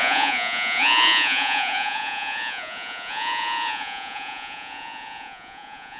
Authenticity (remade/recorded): remade